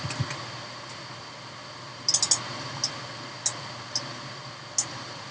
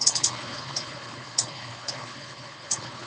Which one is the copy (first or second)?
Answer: second